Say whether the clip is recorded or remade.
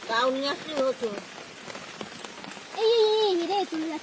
recorded